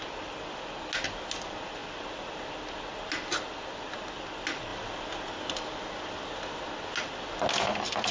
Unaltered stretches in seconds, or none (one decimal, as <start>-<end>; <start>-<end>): 0.0-8.1